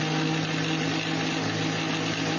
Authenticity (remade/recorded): recorded